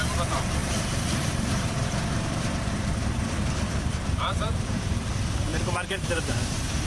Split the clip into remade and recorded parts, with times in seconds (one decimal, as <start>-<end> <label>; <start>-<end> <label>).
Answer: 0.0-0.6 recorded; 0.6-4.7 remade; 4.7-5.5 recorded; 5.5-6.9 remade